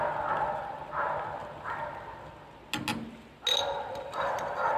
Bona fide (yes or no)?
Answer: yes